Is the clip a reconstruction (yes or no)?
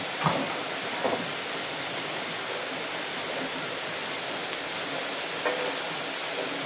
no